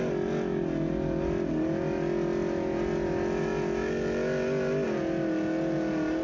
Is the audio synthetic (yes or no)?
no